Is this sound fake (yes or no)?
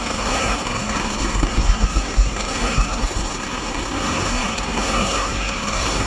yes